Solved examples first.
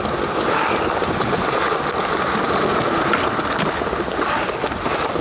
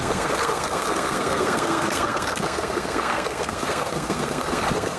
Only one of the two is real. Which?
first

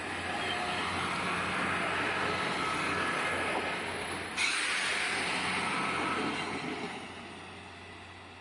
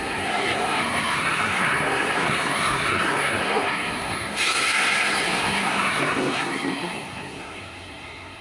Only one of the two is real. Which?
first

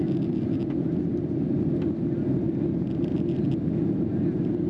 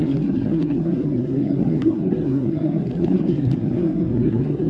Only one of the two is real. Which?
first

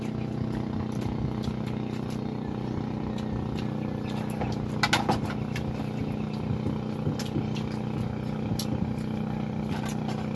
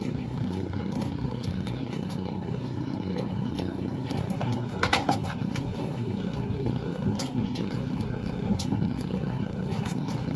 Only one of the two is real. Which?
first